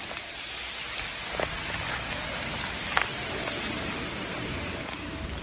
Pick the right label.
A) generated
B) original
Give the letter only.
B